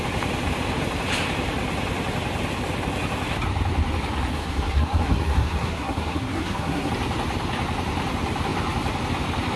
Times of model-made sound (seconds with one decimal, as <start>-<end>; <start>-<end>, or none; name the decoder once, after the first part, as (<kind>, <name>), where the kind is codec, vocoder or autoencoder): 4.3-6.9 (codec, SNAC)